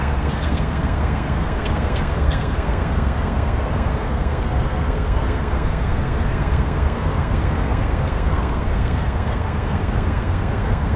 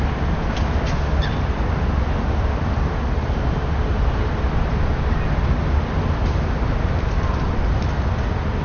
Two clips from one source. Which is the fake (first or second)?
first